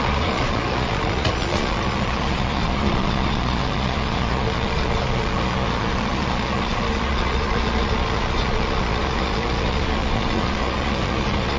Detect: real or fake fake